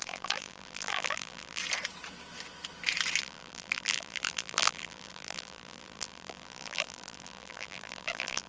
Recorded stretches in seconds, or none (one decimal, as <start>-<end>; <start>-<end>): 1.6-3.2